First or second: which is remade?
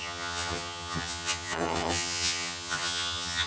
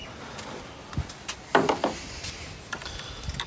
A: first